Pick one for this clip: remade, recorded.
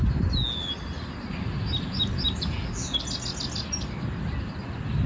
recorded